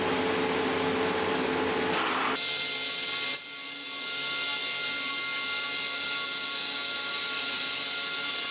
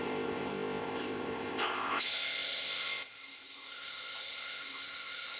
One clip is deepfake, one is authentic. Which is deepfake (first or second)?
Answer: second